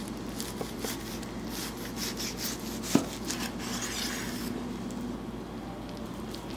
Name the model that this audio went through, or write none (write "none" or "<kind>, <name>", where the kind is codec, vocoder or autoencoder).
none